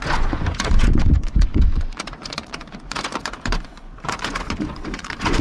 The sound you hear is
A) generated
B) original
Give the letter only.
A